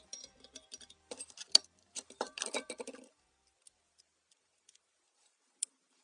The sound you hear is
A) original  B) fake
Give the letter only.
B